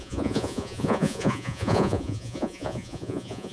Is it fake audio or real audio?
fake